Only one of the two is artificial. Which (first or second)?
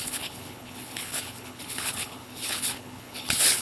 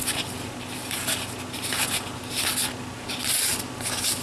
first